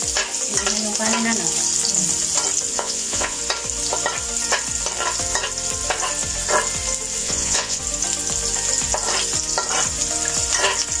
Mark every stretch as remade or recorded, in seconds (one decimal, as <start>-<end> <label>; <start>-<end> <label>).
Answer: 0.0-2.7 recorded; 2.7-3.4 remade; 3.4-7.2 recorded; 7.2-7.8 remade; 7.8-11.0 recorded